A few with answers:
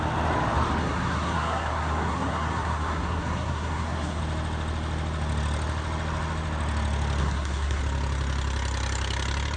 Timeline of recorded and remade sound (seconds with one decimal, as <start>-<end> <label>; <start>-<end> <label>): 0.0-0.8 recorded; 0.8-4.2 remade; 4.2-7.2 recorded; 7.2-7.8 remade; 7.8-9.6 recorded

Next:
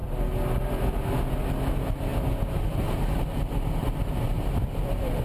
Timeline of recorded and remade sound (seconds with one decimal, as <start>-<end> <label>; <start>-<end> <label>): 0.0-5.2 recorded

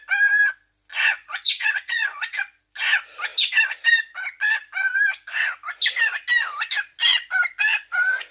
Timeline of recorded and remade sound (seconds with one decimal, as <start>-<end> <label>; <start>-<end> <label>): 0.0-0.9 recorded; 0.9-2.6 remade; 2.6-8.3 recorded

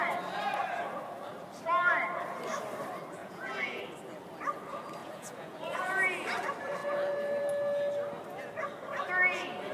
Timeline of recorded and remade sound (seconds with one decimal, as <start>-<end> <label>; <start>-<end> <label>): 0.0-3.2 recorded; 3.2-3.8 remade; 3.8-5.0 recorded; 5.0-5.6 remade; 5.6-9.7 recorded

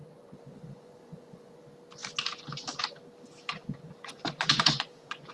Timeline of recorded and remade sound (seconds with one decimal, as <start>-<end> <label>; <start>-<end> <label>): 0.0-1.6 remade; 1.6-3.6 recorded; 3.6-5.3 remade